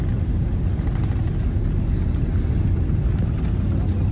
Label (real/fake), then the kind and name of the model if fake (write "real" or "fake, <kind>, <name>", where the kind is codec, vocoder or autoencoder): real